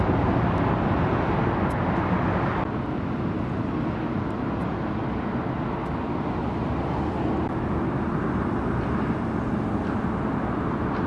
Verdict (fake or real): real